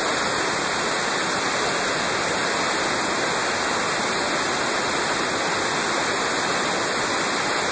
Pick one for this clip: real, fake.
real